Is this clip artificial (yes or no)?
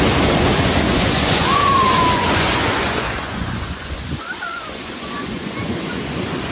yes